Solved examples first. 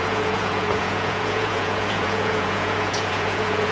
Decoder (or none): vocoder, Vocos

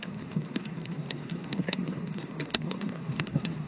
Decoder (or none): codec, SNAC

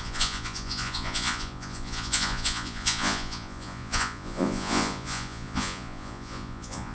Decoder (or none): vocoder, Vocos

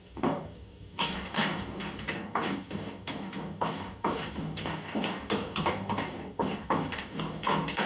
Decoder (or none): codec, DAC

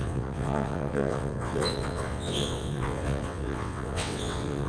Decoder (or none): vocoder, WaveNeXt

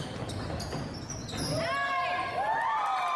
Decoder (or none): none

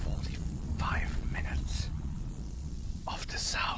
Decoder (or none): vocoder, Vocos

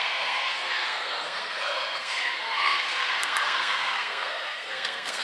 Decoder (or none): codec, SNAC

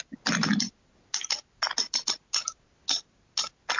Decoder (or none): none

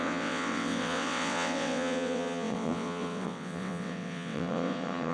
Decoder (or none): vocoder, WaveNeXt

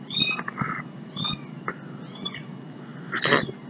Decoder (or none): none